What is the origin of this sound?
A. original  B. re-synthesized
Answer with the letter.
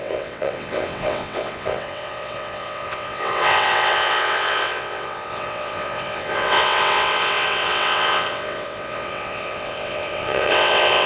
B